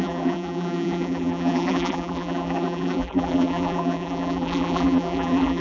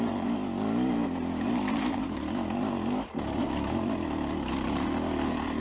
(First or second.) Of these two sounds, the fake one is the first